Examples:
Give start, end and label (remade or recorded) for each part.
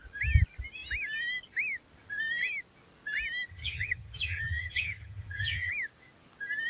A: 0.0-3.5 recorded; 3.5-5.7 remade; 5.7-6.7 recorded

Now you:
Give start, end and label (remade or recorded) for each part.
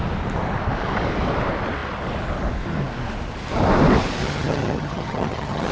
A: 0.0-4.2 recorded; 4.2-5.7 remade